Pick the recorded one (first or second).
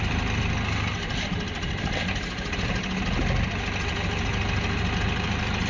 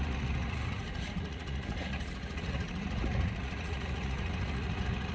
first